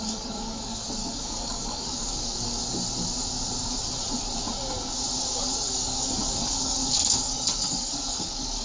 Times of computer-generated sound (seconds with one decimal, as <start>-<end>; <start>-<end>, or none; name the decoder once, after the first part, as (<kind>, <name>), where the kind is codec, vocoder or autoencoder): 0.0-2.6 (codec, DAC); 5.4-8.6